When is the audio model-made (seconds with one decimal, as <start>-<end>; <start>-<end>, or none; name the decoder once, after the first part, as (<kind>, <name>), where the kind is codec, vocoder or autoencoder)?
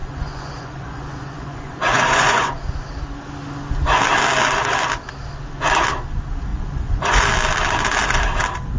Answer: 0.0-2.6 (vocoder, Vocos); 6.5-7.2